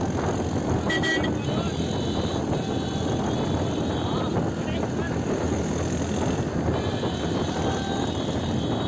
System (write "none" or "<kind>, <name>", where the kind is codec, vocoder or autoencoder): none